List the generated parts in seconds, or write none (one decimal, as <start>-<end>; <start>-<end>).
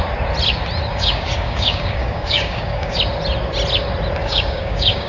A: 0.9-3.0; 4.2-5.1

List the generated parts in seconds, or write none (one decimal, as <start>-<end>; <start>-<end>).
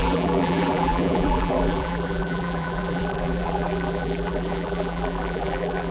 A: 0.0-5.9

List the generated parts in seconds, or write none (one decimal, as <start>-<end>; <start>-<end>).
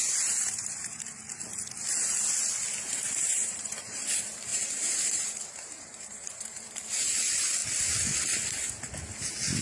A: 0.0-1.2; 2.8-7.6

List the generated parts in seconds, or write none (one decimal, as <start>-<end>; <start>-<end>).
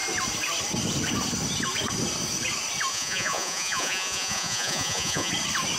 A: 2.9-5.3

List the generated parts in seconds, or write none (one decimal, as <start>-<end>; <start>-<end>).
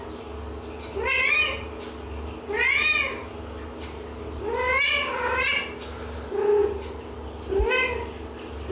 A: none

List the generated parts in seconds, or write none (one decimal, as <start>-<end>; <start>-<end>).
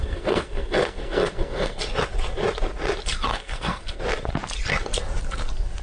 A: 0.0-1.8; 3.3-4.0